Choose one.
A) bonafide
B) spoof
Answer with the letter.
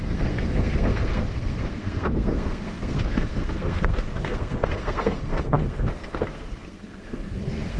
B